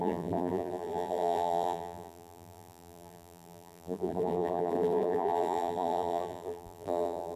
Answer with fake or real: fake